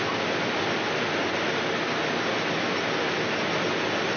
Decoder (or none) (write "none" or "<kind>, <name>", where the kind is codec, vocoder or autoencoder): none